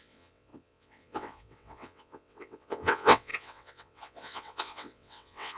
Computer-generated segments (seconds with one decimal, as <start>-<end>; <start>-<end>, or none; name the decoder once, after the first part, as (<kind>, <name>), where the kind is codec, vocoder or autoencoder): 0.0-5.6 (vocoder, WaveNeXt)